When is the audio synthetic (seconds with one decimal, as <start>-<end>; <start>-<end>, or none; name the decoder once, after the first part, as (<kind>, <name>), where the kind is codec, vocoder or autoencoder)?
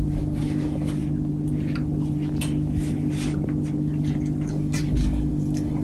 0.0-1.0 (codec, DAC); 4.5-5.8